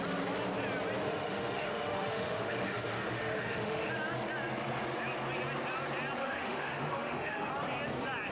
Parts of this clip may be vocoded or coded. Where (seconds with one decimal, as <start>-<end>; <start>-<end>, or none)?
1.0-3.9; 6.2-7.5